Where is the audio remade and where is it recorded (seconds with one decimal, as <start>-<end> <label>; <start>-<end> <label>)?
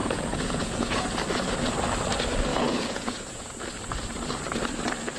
0.0-1.0 remade; 1.0-2.5 recorded; 2.5-3.6 remade; 3.6-5.2 recorded